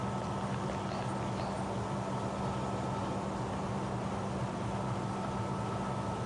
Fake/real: fake